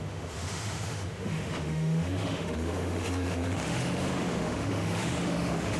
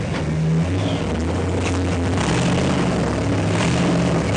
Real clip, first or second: second